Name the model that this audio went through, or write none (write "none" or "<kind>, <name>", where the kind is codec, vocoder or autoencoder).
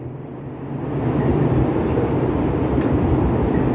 none